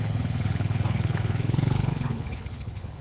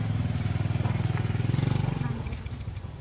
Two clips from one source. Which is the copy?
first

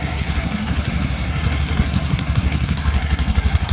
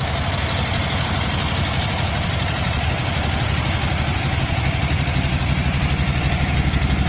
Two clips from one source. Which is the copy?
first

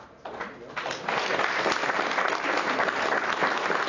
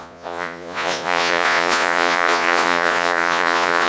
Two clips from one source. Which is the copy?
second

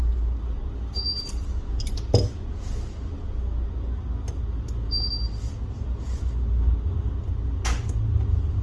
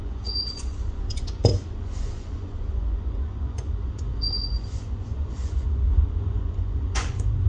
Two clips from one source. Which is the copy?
second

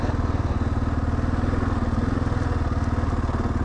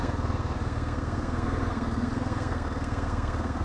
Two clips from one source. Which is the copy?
second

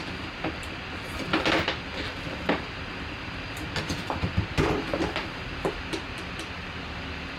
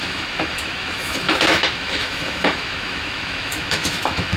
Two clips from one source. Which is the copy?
second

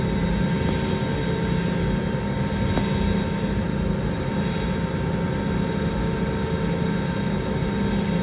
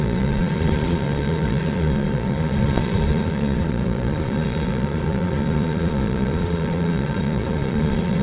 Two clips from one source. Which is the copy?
second